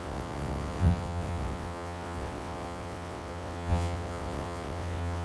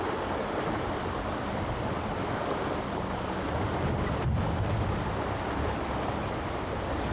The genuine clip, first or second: second